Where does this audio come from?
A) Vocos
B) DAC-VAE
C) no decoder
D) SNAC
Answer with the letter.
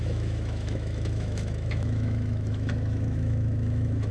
B